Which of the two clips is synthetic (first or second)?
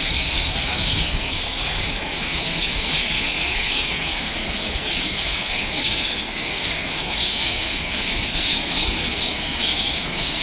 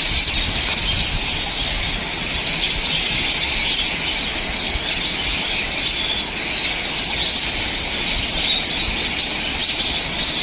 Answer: first